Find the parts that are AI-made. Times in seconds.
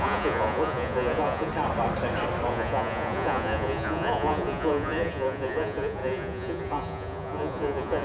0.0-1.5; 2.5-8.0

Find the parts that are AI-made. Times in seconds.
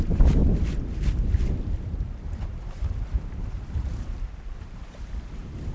0.0-0.4; 2.7-5.7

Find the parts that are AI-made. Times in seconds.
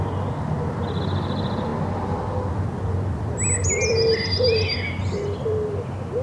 none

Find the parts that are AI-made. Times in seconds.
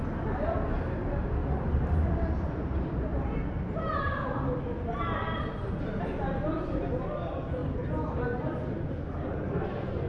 1.4-4.6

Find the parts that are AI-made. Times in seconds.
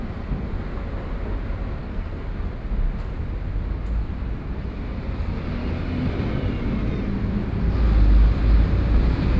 1.8-2.3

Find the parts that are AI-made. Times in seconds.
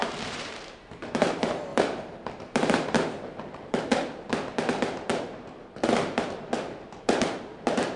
0.0-3.9; 5.1-8.0